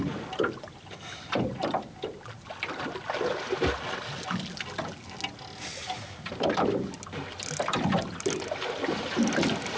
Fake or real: real